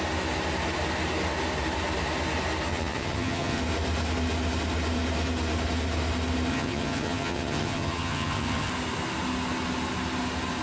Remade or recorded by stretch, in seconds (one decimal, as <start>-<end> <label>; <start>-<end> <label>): 0.0-2.7 recorded; 2.7-3.6 remade; 3.6-6.5 recorded; 6.5-8.7 remade; 8.7-10.6 recorded